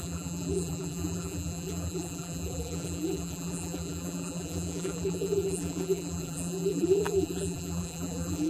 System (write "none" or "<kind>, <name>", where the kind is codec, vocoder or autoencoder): vocoder, BigVGAN v2